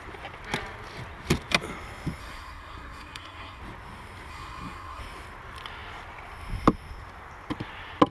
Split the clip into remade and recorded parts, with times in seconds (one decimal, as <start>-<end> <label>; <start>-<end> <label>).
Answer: 0.0-2.2 recorded; 2.2-3.6 remade; 3.6-4.3 recorded; 4.3-5.0 remade; 5.0-8.1 recorded